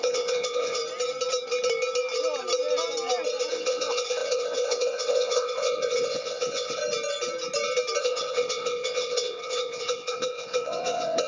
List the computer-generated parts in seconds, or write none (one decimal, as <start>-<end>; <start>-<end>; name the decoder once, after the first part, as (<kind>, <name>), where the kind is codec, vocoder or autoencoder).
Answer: 0.0-0.8 (vocoder, WaveNeXt); 3.5-6.8; 8.0-11.3

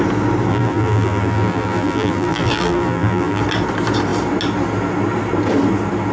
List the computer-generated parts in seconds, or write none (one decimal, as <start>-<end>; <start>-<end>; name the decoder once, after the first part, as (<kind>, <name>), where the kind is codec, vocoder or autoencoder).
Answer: 0.5-3.4 (vocoder, BigVGAN v2)

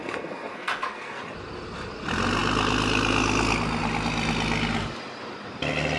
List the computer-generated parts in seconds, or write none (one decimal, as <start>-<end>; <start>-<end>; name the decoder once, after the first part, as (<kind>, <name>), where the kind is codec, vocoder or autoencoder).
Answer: 0.0-1.2 (codec, SNAC)

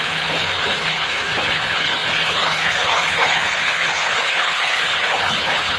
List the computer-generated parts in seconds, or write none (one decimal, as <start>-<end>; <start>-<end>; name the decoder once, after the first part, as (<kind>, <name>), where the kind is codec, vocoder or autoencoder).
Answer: 0.0-5.8 (codec, HILCodec)

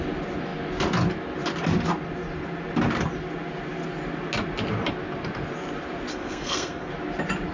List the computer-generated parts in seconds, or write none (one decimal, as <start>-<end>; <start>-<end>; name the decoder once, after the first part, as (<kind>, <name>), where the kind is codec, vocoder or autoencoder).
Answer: 6.1-6.9 (codec, SNAC)

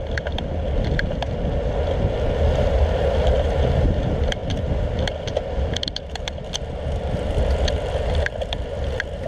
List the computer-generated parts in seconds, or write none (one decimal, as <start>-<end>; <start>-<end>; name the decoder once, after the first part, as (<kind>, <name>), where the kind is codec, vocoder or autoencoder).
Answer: none

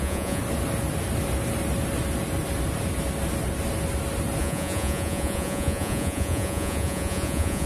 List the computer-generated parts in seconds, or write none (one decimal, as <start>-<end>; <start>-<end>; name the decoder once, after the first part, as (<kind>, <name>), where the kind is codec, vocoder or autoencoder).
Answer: 0.0-0.4 (vocoder, Vocos); 4.4-7.7

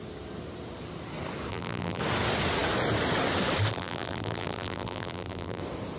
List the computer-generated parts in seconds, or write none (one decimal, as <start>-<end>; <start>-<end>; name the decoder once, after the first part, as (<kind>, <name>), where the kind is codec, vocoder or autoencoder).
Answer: 1.5-2.0 (vocoder, BigVGAN v2); 3.7-5.6